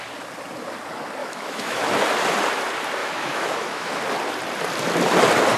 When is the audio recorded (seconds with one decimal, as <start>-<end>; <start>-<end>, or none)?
0.0-1.2; 1.9-3.0; 3.9-5.6